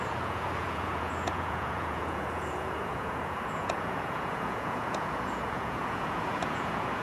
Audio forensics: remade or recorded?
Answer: remade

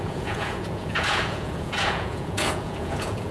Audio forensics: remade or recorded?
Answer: remade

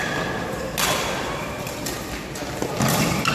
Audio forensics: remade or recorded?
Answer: recorded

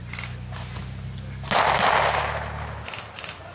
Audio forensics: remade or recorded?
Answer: recorded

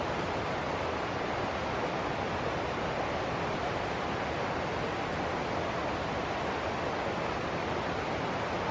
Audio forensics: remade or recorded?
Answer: recorded